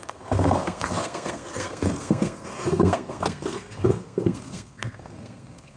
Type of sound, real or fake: fake